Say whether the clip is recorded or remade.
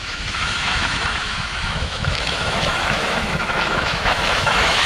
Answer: remade